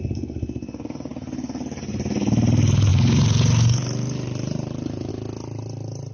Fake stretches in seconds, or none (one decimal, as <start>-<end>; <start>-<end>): 2.9-5.1